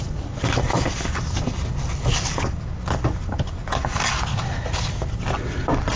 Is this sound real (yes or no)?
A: yes